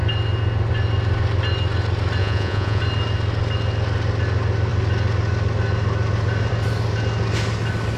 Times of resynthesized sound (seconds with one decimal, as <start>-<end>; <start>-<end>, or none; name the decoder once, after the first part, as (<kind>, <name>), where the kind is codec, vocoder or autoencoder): 2.2-2.8 (vocoder, Vocos)